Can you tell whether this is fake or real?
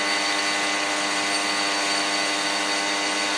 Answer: real